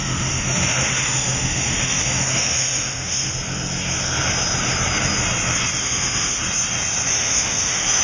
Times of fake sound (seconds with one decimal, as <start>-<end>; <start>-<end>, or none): 0.0-3.3; 5.8-6.4; 7.1-8.0